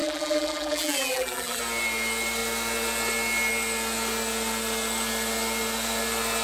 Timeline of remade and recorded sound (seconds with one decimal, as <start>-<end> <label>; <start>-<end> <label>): 0.0-1.6 remade; 1.6-6.4 recorded